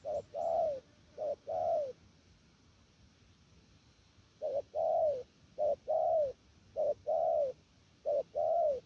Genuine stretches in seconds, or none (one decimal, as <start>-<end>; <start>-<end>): 0.0-8.9